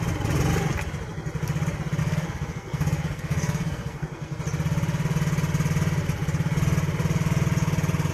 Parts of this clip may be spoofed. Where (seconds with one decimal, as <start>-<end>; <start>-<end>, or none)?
2.0-4.4

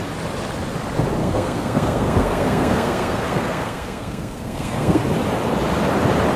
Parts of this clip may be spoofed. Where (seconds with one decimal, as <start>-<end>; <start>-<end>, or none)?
1.2-5.0

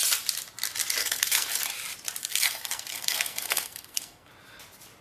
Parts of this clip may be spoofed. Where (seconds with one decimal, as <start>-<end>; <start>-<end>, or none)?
1.0-1.5; 2.2-4.3

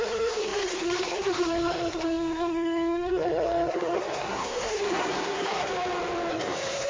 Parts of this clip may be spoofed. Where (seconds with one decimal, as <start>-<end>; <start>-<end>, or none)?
0.0-5.7; 6.3-6.9

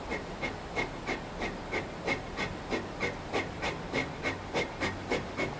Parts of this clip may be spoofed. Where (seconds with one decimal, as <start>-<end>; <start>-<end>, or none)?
none

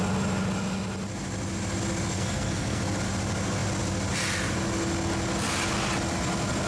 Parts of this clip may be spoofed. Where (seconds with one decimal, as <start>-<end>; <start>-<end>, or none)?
2.1-2.8

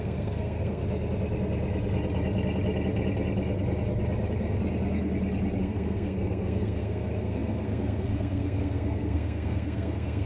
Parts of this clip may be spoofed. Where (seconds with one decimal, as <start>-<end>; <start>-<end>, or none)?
0.0-0.8; 5.6-10.3

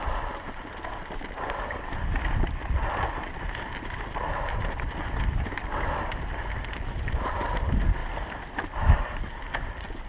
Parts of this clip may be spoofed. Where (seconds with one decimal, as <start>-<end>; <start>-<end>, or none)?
none